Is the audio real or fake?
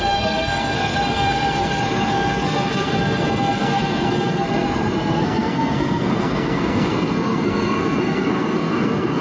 fake